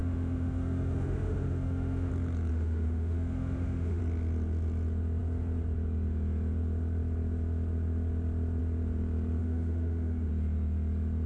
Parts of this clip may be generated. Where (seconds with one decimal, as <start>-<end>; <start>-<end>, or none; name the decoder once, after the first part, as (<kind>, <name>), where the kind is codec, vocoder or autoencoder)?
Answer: 0.0-2.1 (autoencoder, DAC-VAE); 2.5-4.0; 9.4-10.3

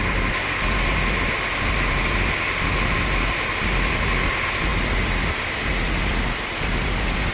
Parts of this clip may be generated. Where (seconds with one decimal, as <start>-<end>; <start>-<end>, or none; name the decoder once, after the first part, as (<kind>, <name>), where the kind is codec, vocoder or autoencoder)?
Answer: none

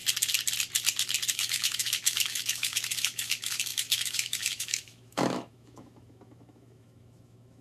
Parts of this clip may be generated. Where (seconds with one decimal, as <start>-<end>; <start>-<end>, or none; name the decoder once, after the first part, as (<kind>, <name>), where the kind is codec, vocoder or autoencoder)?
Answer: 1.3-7.6 (autoencoder, DAC-VAE)

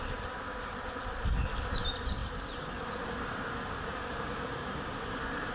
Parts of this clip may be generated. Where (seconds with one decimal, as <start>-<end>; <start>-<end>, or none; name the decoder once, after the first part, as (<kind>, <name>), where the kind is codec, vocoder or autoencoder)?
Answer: none

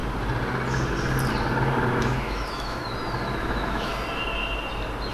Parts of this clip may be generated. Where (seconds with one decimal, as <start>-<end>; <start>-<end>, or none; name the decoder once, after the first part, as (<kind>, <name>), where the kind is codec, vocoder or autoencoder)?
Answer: 2.0-2.8 (autoencoder, DAC-VAE); 3.4-3.9

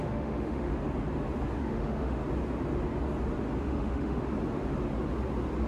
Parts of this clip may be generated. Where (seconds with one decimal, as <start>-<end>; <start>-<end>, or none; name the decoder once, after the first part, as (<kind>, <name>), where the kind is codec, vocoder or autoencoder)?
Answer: 0.0-0.7 (autoencoder, DAC-VAE); 1.6-2.2; 3.6-4.2

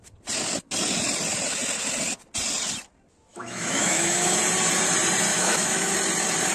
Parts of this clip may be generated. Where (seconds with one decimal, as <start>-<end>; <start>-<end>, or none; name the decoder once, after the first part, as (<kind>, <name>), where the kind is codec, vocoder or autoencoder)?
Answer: 3.3-4.4 (autoencoder, DAC-VAE); 5.3-5.9